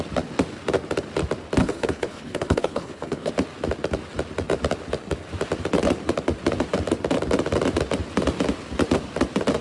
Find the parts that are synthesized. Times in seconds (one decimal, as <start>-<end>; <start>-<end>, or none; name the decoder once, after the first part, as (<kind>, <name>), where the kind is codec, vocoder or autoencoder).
1.6-3.3 (codec, HILCodec)